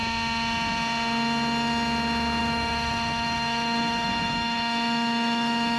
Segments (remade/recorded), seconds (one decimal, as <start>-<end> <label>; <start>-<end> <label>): 0.0-2.4 recorded; 2.4-5.8 remade